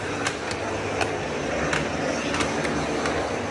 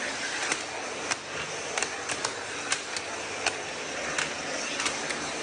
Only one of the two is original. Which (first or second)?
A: first